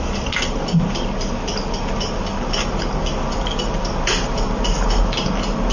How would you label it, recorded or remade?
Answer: recorded